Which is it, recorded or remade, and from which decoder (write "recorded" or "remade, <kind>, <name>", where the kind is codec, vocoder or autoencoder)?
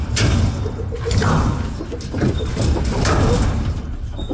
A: recorded